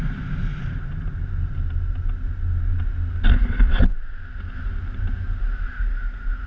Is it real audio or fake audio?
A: real